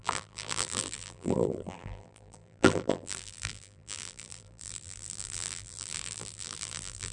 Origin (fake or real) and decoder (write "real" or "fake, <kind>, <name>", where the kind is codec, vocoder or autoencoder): fake, vocoder, BigVGAN v2